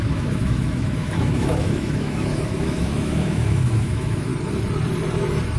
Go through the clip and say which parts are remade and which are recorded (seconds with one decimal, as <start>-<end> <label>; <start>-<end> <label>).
0.0-4.3 remade; 4.3-5.6 recorded